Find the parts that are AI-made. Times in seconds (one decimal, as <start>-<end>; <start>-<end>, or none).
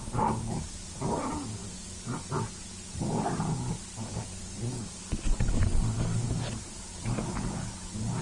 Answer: 1.6-2.4; 4.3-6.3